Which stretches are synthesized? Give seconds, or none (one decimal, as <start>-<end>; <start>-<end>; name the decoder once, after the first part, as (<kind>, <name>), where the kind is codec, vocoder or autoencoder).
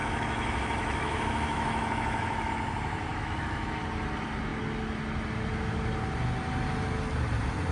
0.0-2.5 (autoencoder, DAC-VAE); 3.1-3.8